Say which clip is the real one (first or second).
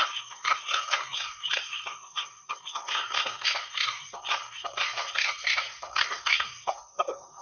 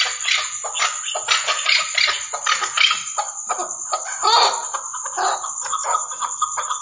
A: second